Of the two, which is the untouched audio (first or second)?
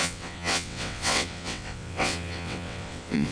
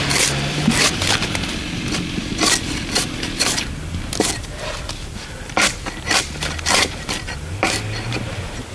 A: second